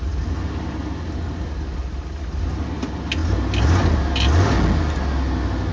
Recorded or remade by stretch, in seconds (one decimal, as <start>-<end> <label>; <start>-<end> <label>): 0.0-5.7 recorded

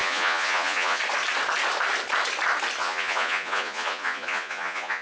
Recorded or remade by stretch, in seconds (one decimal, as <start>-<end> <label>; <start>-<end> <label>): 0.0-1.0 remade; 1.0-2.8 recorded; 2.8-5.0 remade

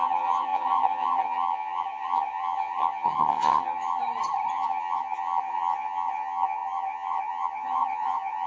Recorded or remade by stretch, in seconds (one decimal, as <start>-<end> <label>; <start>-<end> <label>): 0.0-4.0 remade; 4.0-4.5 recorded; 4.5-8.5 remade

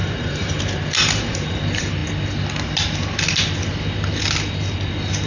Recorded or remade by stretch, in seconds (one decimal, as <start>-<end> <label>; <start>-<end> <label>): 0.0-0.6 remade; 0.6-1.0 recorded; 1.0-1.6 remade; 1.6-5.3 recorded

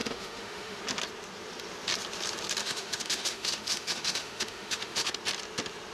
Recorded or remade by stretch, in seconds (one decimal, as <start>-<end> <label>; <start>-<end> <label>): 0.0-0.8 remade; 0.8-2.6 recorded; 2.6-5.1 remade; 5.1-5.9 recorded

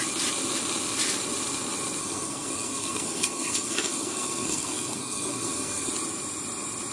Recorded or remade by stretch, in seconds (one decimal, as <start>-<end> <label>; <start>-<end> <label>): 0.0-2.0 recorded; 2.0-5.9 remade; 5.9-6.9 recorded

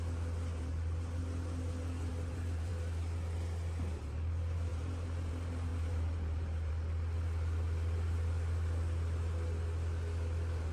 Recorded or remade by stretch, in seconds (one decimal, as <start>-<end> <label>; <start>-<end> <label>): 0.0-2.1 recorded; 2.1-2.7 remade; 2.7-4.7 recorded; 4.7-5.3 remade; 5.3-5.7 recorded; 5.7-6.7 remade; 6.7-10.7 recorded

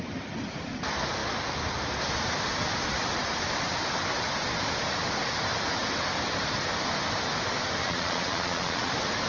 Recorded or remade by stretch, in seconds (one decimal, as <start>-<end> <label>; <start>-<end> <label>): 0.0-7.8 recorded; 7.8-8.9 remade; 8.9-9.3 recorded